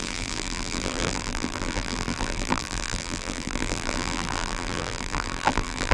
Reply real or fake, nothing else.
fake